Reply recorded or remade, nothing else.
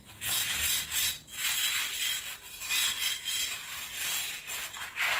recorded